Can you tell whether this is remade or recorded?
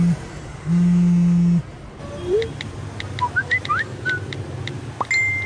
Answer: recorded